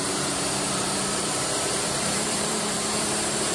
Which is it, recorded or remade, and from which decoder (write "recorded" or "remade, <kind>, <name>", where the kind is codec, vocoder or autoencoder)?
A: remade, vocoder, BigVGAN v2